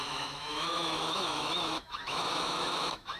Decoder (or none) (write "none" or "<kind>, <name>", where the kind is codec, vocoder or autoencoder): autoencoder, DAC-VAE